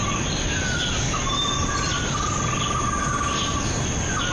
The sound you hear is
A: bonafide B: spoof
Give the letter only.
A